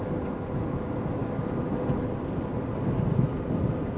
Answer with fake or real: real